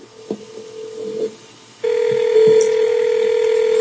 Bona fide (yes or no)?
yes